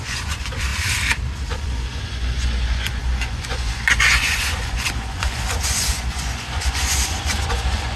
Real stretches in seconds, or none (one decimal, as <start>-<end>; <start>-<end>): 0.7-1.5